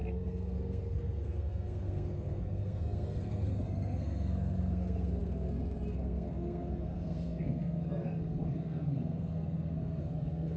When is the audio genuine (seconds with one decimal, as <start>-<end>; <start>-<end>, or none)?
none